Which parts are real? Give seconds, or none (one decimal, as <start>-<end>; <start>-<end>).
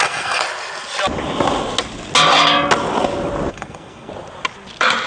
0.4-3.5; 4.1-5.1